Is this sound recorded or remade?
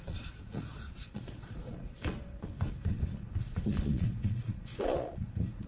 remade